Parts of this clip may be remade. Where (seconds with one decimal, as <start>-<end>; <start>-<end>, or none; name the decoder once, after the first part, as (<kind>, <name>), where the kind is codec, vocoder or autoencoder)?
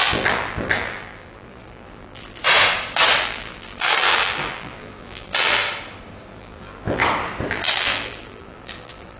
0.0-2.4 (vocoder, BigVGAN v2); 3.2-5.6; 6.3-7.0; 7.5-9.2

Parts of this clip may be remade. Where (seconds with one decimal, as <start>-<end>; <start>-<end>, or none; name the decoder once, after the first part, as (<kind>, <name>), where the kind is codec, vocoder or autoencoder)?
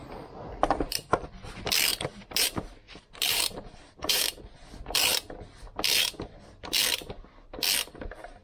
1.9-4.4 (vocoder, BigVGAN v2)